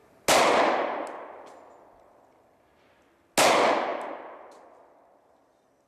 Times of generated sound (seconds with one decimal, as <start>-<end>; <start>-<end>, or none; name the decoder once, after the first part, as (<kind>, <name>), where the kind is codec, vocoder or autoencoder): none